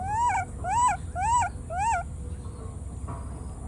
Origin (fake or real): real